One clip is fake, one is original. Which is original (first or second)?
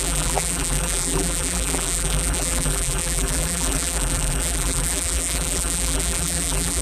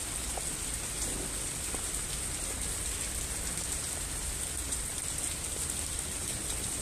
second